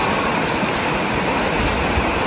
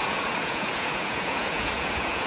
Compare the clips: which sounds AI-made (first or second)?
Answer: second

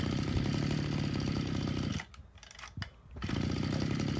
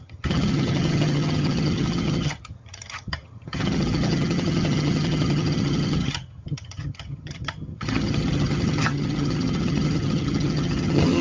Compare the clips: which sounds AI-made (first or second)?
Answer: second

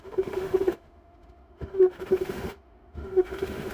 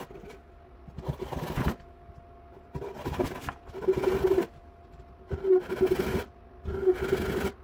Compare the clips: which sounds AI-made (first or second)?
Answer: first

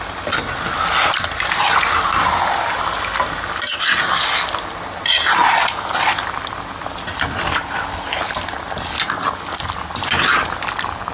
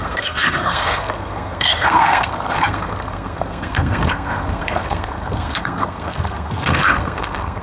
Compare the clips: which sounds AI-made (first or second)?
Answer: second